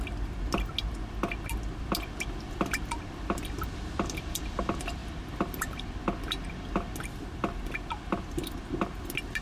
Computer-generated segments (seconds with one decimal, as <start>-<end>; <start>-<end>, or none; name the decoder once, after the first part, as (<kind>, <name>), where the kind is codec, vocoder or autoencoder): none